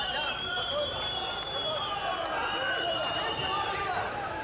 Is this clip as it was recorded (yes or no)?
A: no